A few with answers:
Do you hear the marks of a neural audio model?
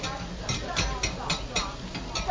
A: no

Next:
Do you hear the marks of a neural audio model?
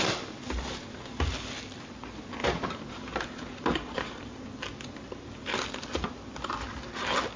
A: no